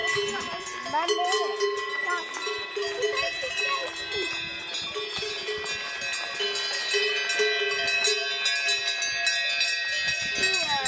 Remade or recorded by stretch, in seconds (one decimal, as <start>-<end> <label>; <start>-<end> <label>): 0.0-10.9 recorded